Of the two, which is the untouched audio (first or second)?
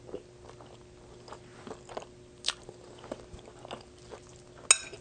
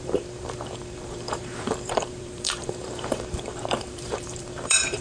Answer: first